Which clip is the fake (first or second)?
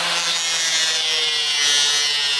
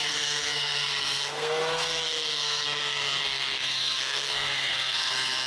second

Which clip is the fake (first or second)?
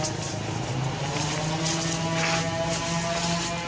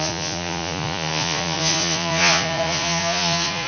second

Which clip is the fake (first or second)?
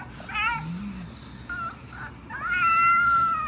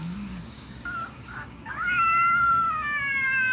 second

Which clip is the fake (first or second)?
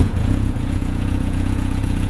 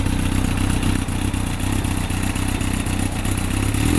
first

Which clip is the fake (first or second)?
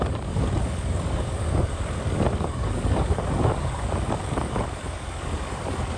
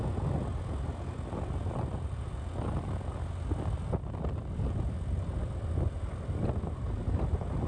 first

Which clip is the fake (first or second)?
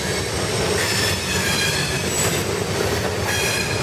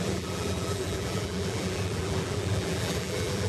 second